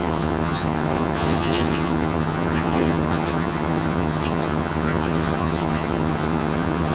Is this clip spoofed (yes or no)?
yes